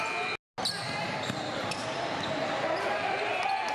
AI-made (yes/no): no